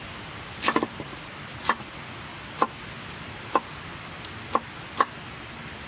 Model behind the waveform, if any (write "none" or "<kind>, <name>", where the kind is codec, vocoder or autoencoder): none